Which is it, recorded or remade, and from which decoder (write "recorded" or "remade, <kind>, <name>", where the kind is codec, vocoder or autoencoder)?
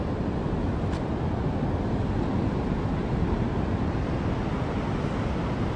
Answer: recorded